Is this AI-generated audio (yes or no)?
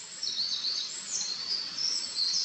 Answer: yes